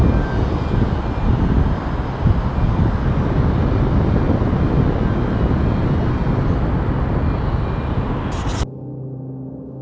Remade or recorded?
recorded